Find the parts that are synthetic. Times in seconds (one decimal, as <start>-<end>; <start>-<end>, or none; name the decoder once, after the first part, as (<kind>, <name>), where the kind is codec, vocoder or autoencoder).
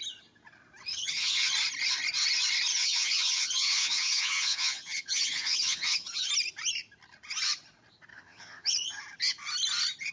0.9-1.5 (vocoder, HiFi-GAN); 2.7-6.3; 8.1-9.0